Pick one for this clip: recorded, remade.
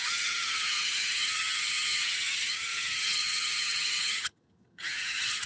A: remade